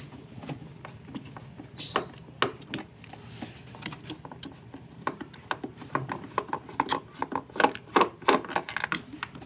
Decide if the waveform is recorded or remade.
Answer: recorded